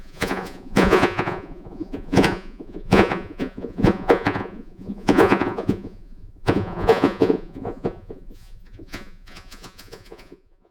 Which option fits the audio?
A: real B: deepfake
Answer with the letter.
B